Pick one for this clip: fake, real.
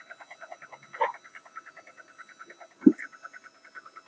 real